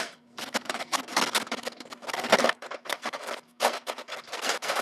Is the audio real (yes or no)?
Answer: no